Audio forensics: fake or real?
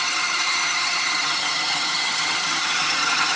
fake